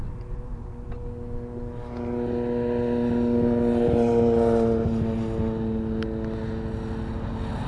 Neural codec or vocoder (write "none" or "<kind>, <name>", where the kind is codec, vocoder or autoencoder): none